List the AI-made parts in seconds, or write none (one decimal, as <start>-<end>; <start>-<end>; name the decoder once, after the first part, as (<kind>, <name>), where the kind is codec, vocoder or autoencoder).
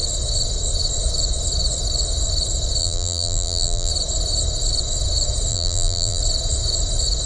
2.8-3.9 (vocoder, BigVGAN v2); 5.5-6.2